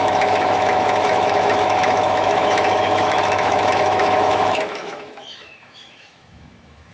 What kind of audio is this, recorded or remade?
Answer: remade